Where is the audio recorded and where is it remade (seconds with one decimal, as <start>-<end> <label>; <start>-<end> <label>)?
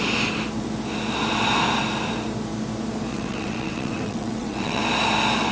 0.0-3.1 recorded; 3.1-4.8 remade; 4.8-5.5 recorded